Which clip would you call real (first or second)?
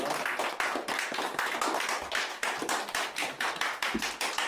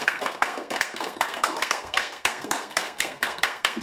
first